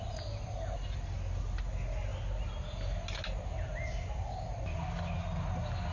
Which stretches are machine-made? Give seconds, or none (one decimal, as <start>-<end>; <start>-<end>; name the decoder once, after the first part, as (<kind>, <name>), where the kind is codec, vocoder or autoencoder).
none